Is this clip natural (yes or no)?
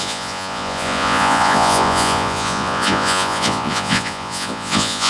no